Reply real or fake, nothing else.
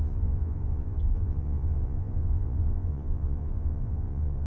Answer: fake